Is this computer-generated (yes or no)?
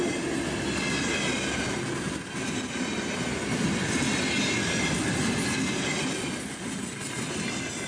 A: no